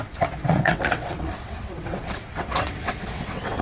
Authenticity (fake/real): fake